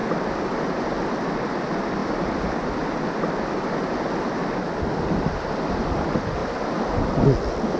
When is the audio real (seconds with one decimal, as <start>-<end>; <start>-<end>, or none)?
0.0-6.4; 7.1-7.8

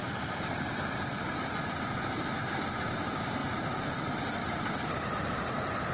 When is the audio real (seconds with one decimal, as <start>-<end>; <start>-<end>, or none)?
3.4-5.1